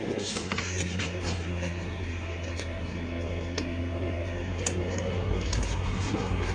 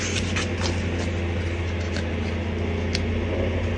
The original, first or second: second